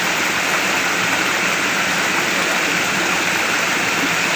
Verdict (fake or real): real